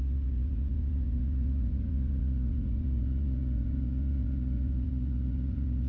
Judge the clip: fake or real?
fake